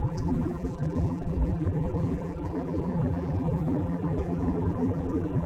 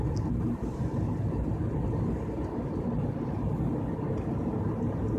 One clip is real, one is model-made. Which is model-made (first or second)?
first